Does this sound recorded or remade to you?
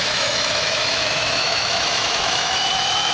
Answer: remade